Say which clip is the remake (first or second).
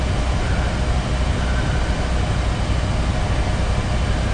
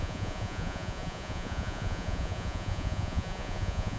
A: second